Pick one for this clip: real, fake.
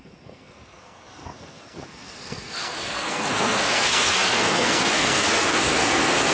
fake